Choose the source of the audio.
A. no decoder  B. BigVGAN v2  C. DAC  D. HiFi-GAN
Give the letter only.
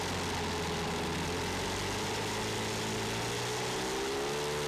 A